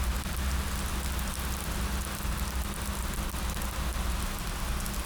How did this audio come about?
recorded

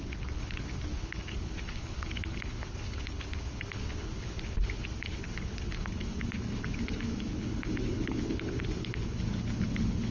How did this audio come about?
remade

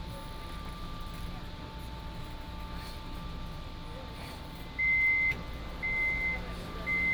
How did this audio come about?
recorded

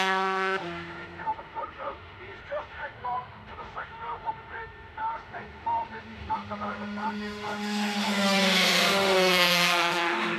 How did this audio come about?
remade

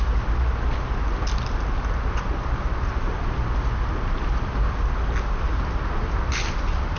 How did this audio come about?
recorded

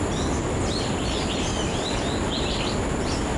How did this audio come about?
recorded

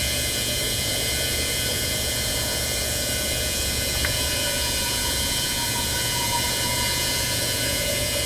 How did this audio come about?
remade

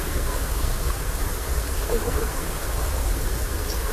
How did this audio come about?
remade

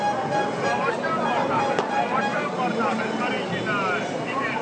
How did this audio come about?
recorded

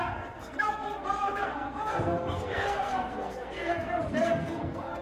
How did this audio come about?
remade